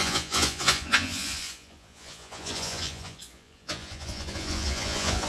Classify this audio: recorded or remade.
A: remade